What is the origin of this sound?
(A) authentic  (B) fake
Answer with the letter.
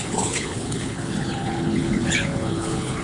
B